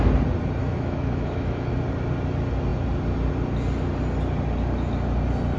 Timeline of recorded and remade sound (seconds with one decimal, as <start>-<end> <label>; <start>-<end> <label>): 0.0-0.6 recorded; 0.6-1.7 remade; 1.7-5.6 recorded